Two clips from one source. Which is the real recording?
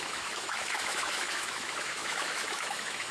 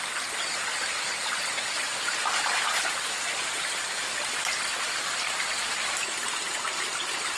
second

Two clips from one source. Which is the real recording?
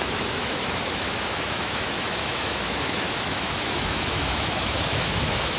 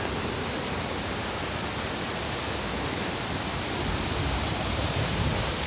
second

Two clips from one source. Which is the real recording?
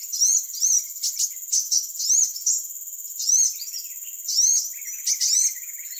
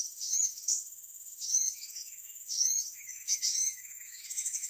first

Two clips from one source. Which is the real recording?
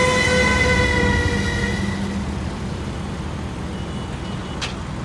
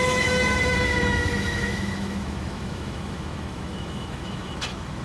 first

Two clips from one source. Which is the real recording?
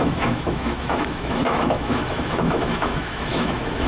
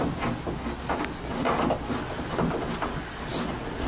second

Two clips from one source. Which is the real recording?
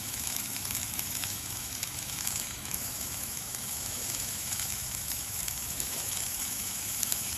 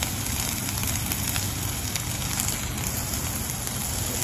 second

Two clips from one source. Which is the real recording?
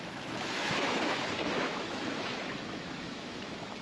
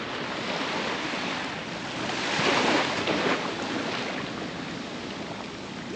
second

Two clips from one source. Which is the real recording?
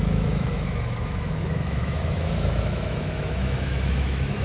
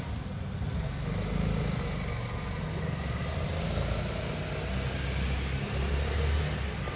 second